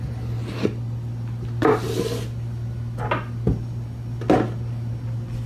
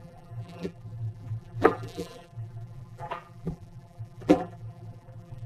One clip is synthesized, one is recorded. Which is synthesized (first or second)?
second